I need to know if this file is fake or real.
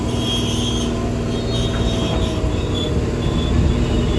real